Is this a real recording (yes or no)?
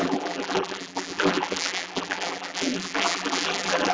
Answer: no